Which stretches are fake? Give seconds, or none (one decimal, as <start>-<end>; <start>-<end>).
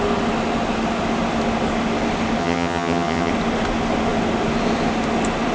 2.4-3.3